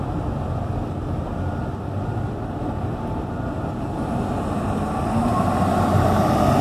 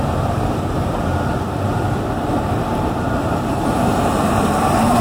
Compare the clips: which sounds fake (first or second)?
second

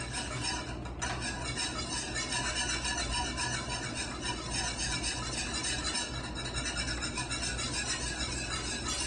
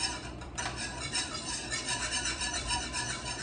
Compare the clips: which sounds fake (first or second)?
second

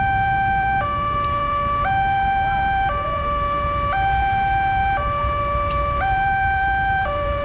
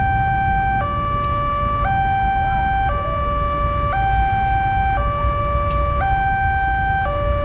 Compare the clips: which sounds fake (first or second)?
first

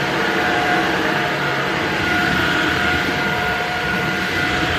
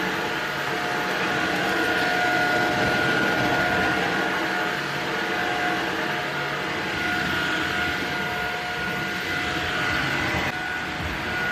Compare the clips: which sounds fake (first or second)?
first